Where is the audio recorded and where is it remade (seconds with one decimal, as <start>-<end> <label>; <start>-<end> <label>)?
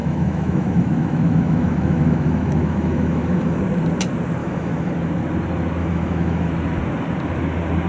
0.0-3.6 remade; 3.6-4.4 recorded; 4.4-4.9 remade; 4.9-5.8 recorded; 5.8-6.5 remade; 6.5-7.9 recorded